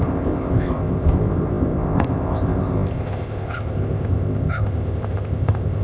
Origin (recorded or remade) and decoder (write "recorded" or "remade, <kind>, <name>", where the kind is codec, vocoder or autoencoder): remade, codec, ZipCodec